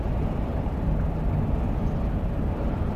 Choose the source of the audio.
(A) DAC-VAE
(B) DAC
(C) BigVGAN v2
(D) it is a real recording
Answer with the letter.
D